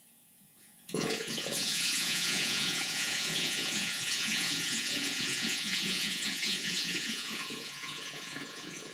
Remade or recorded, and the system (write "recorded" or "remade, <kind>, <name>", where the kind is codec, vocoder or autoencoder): remade, vocoder, Vocos